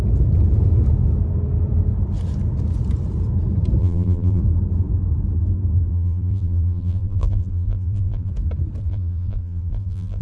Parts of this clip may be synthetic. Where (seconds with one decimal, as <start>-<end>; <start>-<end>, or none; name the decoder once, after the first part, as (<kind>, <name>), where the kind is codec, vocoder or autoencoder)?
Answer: 3.8-4.4 (vocoder, BigVGAN v2); 5.9-8.3; 8.8-10.2